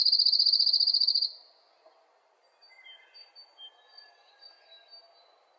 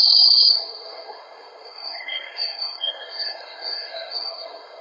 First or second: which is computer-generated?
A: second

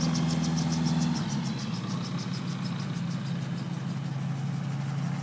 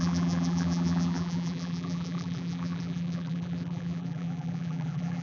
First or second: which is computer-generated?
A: second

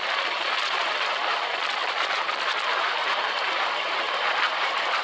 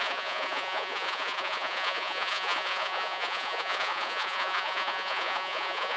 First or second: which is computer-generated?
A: second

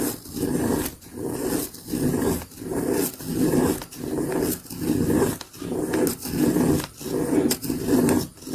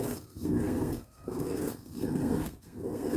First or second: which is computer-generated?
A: second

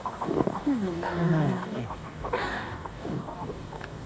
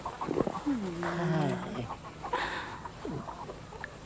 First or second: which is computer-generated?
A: first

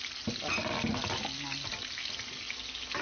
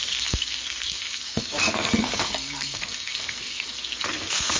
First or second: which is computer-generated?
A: second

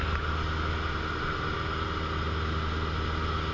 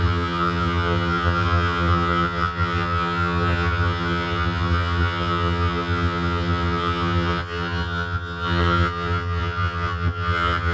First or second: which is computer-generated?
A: second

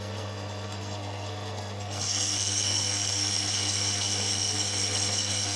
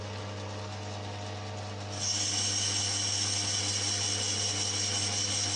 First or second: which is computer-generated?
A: first